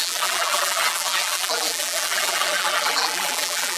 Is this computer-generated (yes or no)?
yes